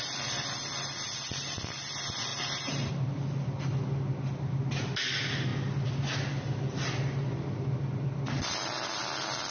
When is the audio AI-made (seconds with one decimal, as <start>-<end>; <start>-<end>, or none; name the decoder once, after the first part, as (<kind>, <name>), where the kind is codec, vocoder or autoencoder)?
2.3-2.9 (vocoder, BigVGAN v2)